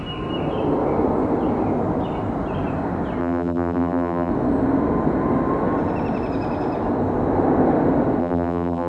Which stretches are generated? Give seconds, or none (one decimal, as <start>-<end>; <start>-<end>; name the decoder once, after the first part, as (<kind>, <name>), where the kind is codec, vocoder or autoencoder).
3.2-4.3 (vocoder, BigVGAN v2); 8.2-8.9